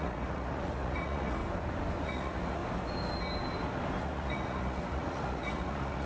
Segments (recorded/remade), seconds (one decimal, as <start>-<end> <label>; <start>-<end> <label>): 0.0-1.4 remade; 1.4-2.0 recorded; 2.0-2.6 remade; 2.6-4.0 recorded; 4.0-6.1 remade